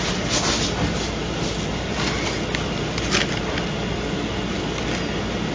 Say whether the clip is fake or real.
real